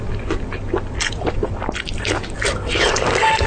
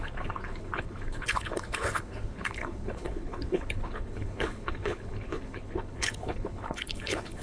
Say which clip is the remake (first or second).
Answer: second